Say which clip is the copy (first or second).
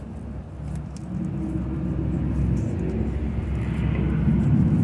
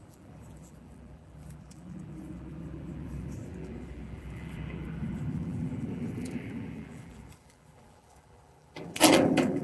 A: second